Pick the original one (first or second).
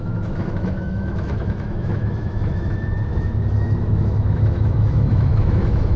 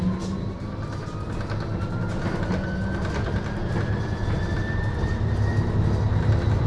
second